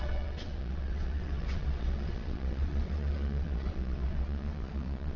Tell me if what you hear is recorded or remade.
remade